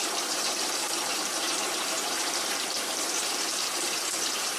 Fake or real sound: fake